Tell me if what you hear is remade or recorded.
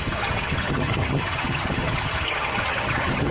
remade